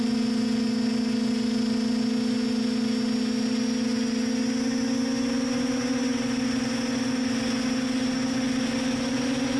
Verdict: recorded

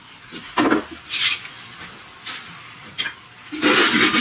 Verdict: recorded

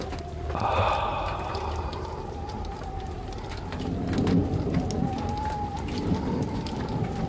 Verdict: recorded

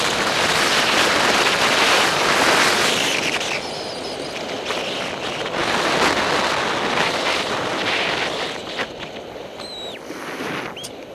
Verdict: recorded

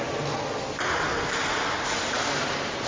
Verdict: recorded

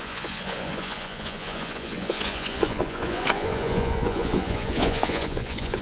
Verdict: remade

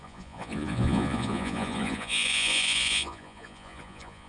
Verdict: remade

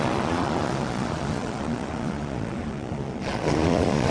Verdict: remade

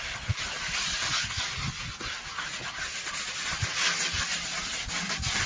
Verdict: recorded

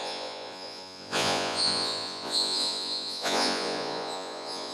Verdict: remade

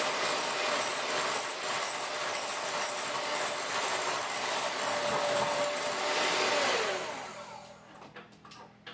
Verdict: recorded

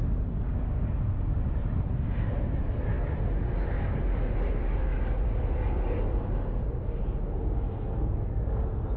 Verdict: recorded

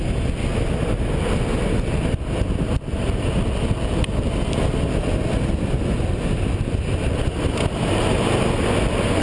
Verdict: recorded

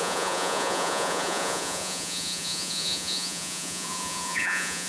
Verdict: remade